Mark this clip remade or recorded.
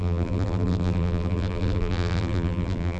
remade